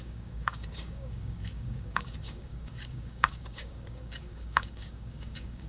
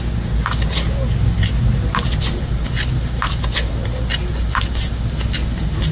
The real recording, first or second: second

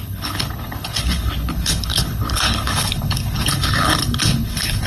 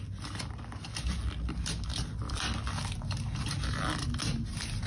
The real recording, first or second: second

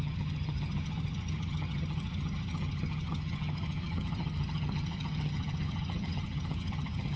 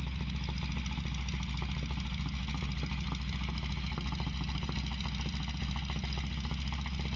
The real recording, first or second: second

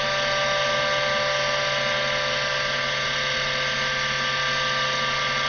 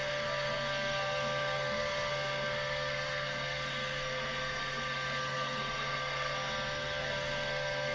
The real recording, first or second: first